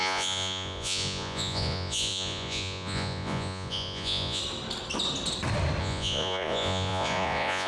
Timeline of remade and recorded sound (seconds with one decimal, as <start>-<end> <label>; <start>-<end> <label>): 0.0-4.4 remade; 4.4-5.8 recorded; 5.8-7.7 remade